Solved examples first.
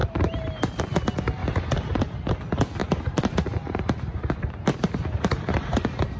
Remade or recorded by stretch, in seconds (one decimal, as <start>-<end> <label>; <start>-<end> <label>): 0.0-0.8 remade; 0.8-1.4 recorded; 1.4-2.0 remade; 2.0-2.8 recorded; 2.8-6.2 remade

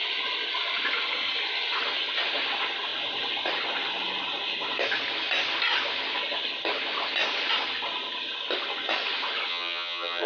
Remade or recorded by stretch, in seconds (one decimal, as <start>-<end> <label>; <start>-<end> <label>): 0.0-9.5 recorded; 9.5-10.3 remade

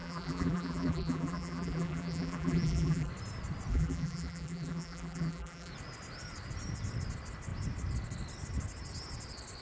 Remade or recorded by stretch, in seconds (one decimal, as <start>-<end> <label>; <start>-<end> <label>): 0.0-3.1 remade; 3.1-3.7 recorded; 3.7-5.7 remade; 5.7-9.6 recorded